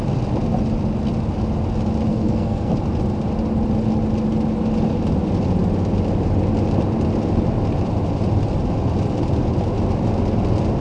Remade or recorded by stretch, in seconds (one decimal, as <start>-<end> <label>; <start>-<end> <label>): 0.0-2.1 recorded; 2.1-2.7 remade; 2.7-10.8 recorded